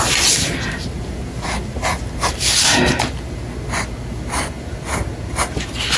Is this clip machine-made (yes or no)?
no